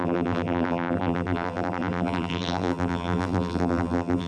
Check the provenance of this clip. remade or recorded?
remade